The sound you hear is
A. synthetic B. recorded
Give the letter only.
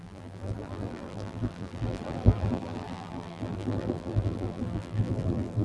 A